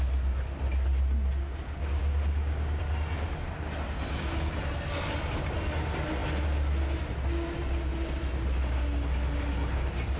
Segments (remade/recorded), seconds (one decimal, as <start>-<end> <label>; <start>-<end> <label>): 0.0-2.0 recorded; 2.0-2.8 remade; 2.8-10.2 recorded